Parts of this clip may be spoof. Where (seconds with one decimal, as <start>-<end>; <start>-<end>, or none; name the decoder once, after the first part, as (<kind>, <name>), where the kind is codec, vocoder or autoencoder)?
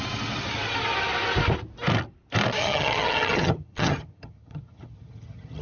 2.6-5.6 (vocoder, HiFi-GAN)